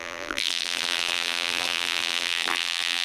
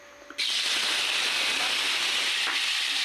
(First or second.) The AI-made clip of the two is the first